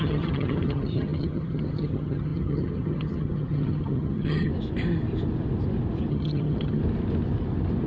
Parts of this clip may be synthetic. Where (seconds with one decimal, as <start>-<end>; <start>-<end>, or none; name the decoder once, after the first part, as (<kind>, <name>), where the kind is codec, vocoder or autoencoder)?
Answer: 0.0-4.5 (vocoder, HiFi-GAN); 6.1-6.8